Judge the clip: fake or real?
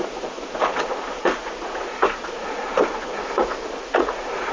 fake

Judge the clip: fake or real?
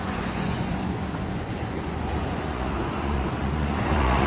fake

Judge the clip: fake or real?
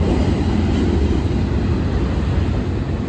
real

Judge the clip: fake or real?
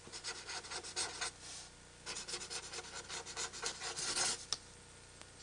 real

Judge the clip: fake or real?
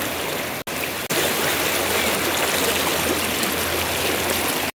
real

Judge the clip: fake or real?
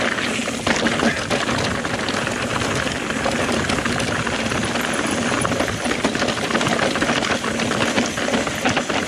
real